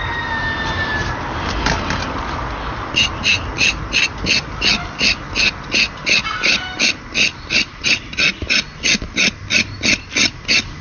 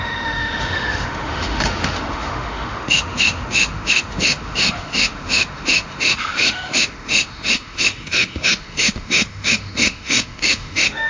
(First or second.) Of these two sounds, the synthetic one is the second